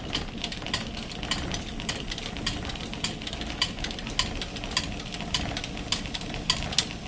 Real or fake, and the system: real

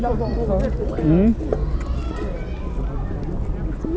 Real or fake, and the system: real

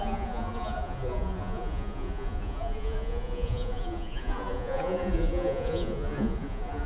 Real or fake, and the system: fake, vocoder, Vocos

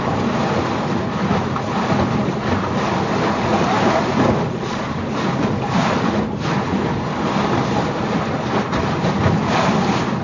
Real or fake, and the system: real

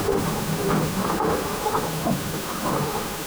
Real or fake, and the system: fake, autoencoder, DAC-VAE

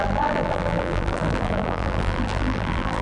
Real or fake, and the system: fake, vocoder, BigVGAN v2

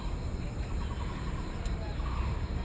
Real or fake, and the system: real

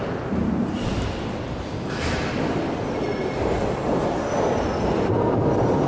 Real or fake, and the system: real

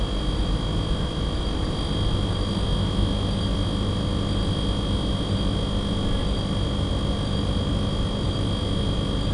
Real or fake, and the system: real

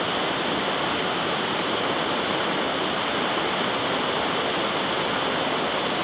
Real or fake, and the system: real